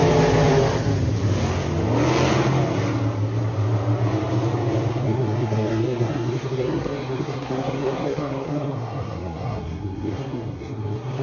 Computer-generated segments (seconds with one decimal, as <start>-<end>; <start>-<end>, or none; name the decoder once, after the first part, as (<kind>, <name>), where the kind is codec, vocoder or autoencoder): 4.9-11.2 (codec, SNAC)

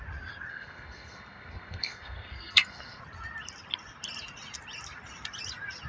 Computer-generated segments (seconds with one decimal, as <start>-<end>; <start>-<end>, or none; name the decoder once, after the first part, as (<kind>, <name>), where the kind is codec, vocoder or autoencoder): 0.5-3.0 (codec, SNAC)

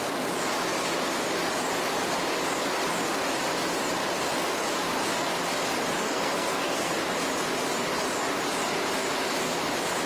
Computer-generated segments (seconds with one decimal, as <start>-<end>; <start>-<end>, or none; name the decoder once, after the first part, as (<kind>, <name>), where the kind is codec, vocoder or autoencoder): 6.0-6.9 (codec, SNAC)

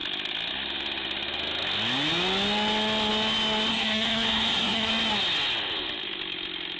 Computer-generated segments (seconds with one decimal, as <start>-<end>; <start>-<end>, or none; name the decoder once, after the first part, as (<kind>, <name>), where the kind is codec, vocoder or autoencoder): 3.7-4.9 (codec, SNAC)